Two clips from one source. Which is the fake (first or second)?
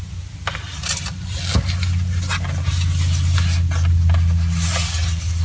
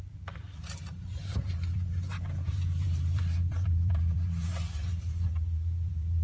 second